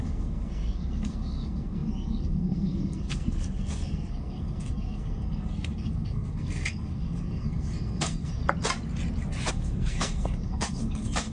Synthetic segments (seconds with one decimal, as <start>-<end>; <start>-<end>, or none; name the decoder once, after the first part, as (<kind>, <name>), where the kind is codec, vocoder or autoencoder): 0.0-8.4 (codec, SNAC); 9.5-11.3